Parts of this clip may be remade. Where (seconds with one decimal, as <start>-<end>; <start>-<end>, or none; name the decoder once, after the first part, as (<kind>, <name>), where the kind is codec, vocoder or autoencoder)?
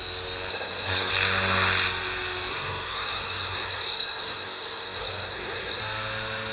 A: 0.5-1.1 (codec, SNAC); 2.5-5.8